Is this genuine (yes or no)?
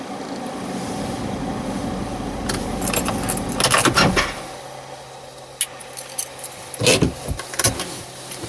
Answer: yes